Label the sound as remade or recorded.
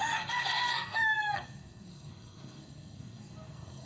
remade